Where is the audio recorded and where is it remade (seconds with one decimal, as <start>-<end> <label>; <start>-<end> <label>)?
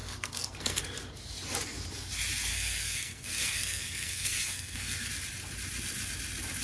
0.0-0.8 remade; 0.8-2.5 recorded; 2.5-5.1 remade; 5.1-6.6 recorded